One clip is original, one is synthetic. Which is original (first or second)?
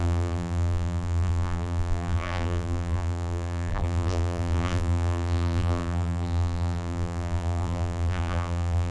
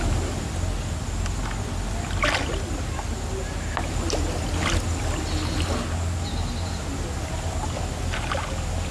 second